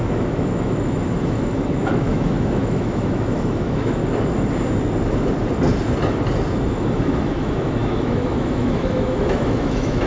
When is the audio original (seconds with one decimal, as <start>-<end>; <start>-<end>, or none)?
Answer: 4.0-6.7

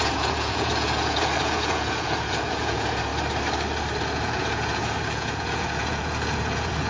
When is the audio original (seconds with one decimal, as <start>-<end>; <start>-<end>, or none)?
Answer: 3.1-4.1

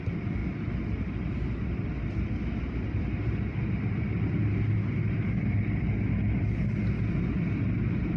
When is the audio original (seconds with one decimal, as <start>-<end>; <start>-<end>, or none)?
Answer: 0.0-8.2

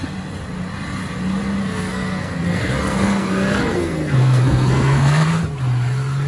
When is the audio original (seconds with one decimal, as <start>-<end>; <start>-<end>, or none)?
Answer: 0.0-1.6; 5.4-6.3

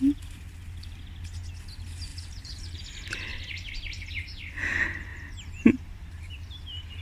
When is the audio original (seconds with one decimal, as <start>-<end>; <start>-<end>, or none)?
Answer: 0.0-2.1; 2.8-5.1; 6.2-7.0